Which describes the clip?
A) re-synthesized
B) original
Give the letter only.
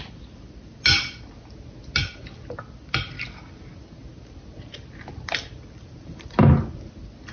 B